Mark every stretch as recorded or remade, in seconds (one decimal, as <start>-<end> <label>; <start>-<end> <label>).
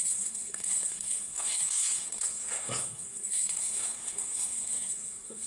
0.0-5.5 remade